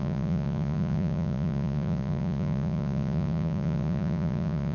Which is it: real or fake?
fake